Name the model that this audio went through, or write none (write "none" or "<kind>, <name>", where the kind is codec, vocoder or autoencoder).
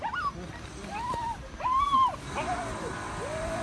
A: vocoder, BigVGAN v2